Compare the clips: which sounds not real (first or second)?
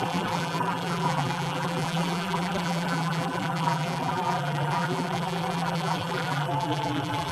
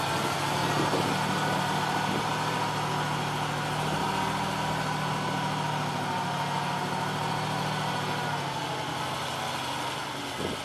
first